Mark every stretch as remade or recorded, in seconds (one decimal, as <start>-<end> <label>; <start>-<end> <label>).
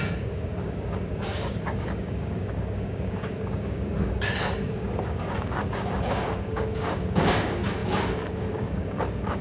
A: 0.0-9.4 remade